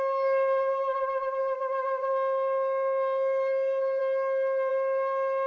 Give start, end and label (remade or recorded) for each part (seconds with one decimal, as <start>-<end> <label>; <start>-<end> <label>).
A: 0.0-4.0 remade; 4.0-4.7 recorded; 4.7-5.5 remade